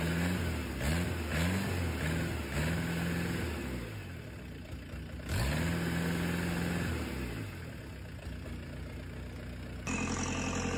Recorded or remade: recorded